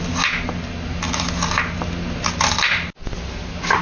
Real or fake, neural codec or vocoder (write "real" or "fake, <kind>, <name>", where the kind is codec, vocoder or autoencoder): real